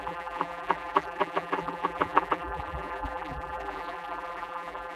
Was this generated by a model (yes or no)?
yes